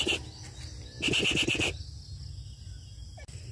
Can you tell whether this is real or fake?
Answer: real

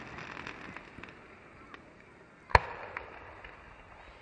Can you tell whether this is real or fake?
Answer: real